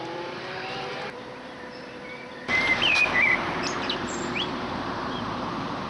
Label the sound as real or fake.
fake